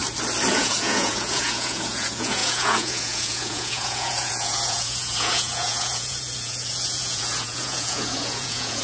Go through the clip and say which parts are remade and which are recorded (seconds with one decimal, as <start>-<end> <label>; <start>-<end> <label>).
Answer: 0.0-0.5 recorded; 0.5-8.8 remade